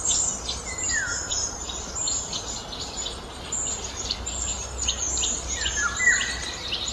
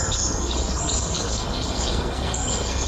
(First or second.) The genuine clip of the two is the first